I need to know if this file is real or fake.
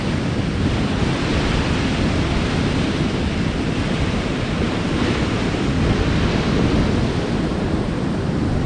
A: fake